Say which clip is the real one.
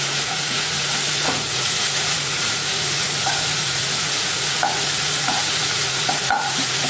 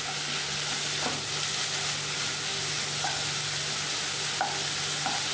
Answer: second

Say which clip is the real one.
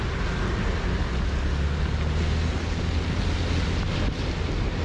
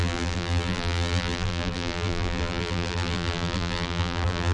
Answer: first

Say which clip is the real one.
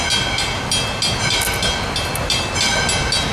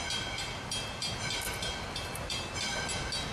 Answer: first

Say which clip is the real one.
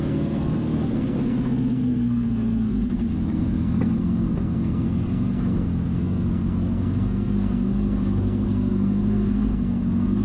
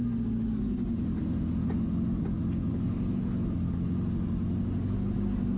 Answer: second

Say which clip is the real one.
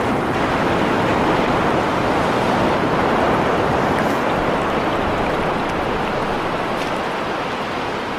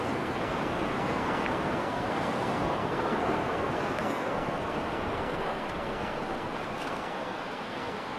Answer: first